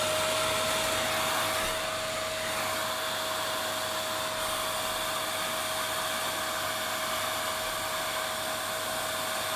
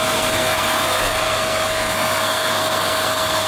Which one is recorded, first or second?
first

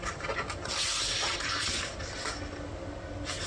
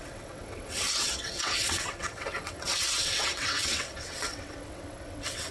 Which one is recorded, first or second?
first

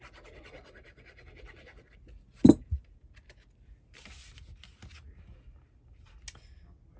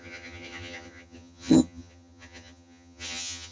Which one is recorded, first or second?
first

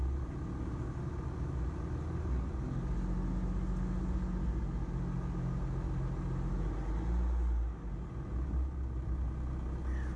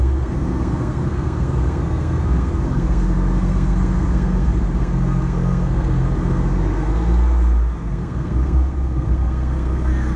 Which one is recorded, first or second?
first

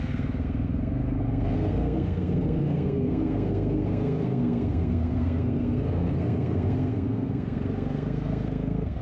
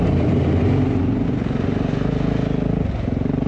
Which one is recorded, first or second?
second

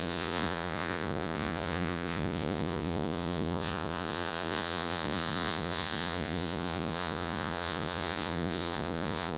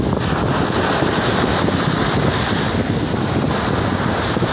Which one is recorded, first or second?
second